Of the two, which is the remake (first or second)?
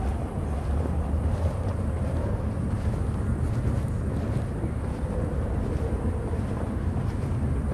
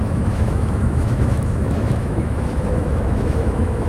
second